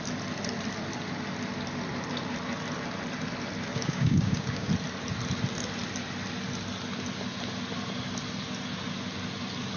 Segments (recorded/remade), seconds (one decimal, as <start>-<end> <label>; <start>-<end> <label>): 0.0-3.7 recorded; 3.7-4.7 remade; 4.7-9.8 recorded